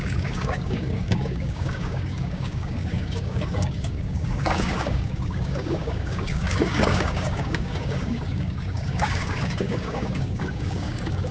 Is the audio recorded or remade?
remade